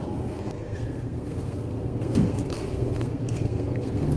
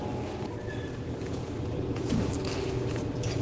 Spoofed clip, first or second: first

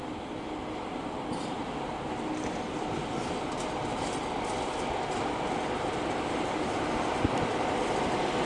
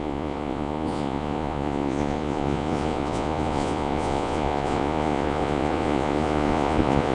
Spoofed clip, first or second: second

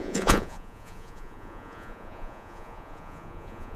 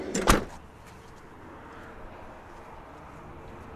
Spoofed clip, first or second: first